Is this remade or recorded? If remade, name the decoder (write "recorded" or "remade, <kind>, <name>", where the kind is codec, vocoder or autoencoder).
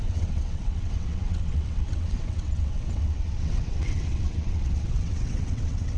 remade, vocoder, WaveNeXt